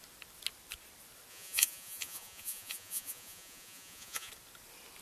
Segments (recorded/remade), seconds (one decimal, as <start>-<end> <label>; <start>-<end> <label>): 0.0-1.3 recorded; 1.3-4.3 remade; 4.3-5.0 recorded